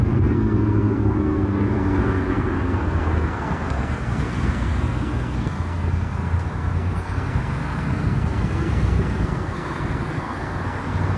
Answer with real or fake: fake